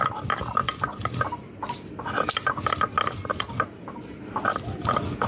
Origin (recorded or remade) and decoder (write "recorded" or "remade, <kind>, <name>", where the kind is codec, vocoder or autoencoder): recorded